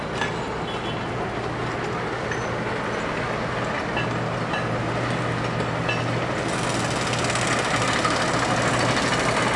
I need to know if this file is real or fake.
real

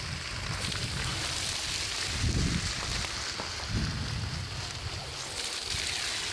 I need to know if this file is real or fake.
real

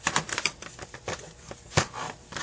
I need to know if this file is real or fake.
fake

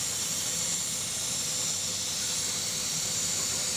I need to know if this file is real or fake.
real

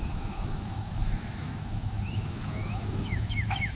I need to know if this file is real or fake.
fake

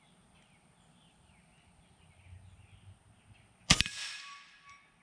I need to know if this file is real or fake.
real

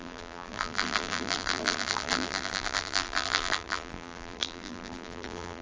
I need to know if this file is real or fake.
fake